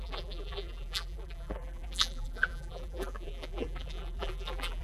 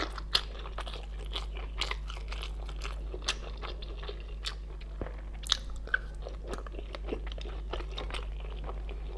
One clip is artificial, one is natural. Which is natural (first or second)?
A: second